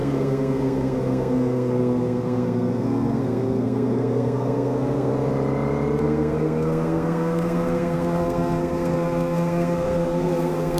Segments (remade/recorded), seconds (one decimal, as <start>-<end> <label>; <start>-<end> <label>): 0.0-5.1 remade; 5.1-6.0 recorded; 6.0-10.8 remade